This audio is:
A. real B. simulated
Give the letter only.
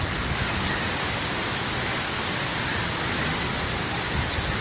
A